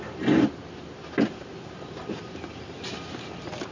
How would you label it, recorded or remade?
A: recorded